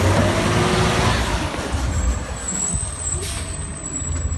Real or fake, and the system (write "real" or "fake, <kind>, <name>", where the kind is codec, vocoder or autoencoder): real